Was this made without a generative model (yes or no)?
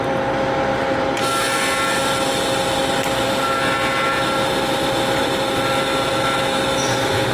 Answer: yes